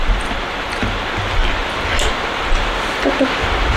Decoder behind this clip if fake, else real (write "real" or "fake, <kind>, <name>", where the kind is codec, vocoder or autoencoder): real